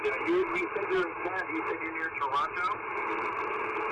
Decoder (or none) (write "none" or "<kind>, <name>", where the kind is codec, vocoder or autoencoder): none